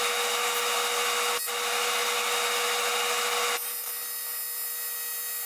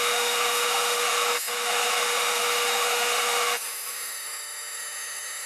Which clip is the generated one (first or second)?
second